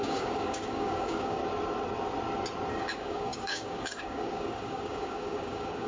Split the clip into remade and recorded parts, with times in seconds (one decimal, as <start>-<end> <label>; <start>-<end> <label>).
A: 0.0-1.4 remade; 1.4-2.7 recorded; 2.7-5.9 remade